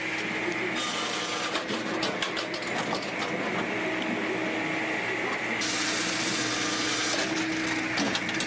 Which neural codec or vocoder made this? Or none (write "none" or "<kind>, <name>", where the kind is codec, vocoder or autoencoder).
none